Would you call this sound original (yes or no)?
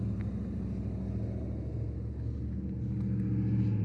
yes